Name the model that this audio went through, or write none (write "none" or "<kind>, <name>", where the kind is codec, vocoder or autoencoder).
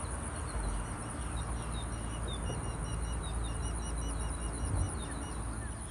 none